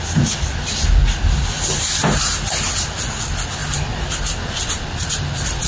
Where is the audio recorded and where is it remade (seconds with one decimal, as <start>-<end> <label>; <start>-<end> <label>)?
0.0-3.6 recorded; 3.6-5.7 remade